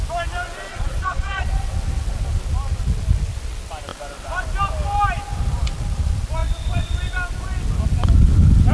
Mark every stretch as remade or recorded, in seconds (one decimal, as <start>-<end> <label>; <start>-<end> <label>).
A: 0.0-0.7 recorded; 0.7-1.5 remade; 1.5-8.7 recorded